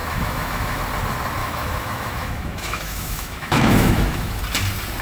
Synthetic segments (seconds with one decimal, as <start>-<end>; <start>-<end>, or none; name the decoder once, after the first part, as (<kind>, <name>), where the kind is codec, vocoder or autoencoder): 0.0-0.8 (autoencoder, DAC-VAE); 1.4-4.4